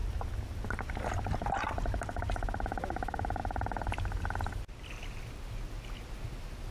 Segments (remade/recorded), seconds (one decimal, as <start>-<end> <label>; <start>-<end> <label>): 0.0-6.7 recorded